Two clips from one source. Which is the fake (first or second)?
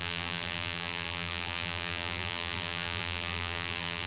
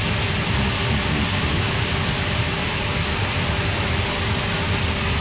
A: first